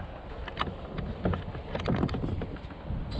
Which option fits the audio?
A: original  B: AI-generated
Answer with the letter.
A